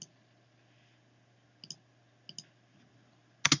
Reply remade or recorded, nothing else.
recorded